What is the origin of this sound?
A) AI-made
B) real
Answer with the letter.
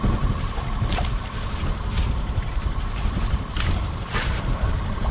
A